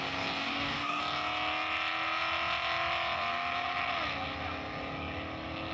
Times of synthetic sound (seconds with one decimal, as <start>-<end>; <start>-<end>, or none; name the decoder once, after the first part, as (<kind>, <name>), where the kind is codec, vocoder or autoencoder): 0.4-1.0 (codec, DAC)